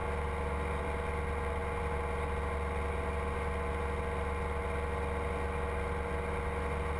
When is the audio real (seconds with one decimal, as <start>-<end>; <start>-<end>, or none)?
0.0-7.0